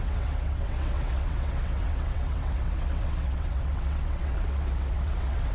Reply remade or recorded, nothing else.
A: remade